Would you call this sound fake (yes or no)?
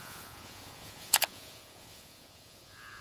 yes